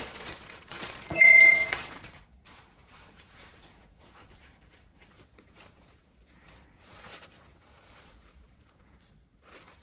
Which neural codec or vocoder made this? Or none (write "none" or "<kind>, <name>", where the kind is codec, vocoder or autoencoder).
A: vocoder, Vocos